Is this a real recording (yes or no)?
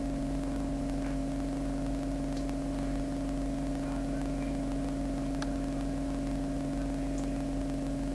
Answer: yes